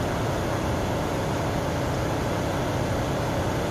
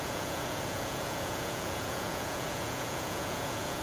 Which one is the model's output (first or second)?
second